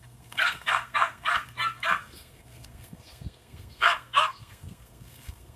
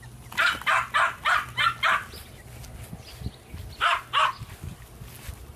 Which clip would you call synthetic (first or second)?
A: first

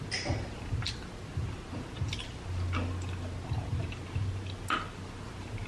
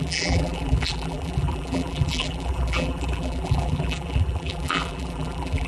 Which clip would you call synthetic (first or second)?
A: second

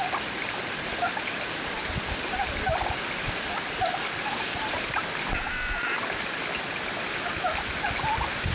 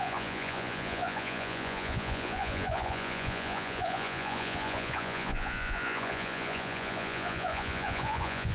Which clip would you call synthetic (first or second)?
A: second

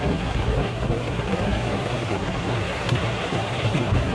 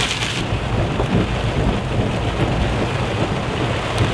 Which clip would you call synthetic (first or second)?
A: first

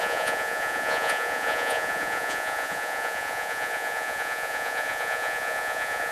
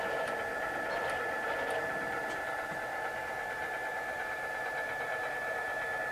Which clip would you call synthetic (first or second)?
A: first